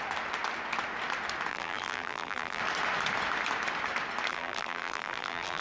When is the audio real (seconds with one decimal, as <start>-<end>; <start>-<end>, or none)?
0.0-1.5; 2.6-4.3